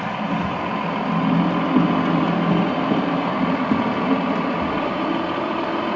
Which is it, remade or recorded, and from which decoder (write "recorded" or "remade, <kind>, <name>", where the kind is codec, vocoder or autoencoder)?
recorded